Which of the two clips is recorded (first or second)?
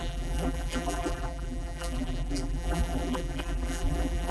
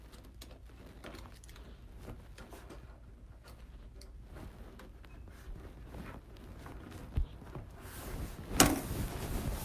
second